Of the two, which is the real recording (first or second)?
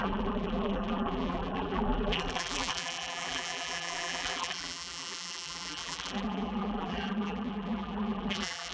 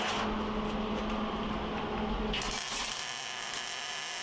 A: second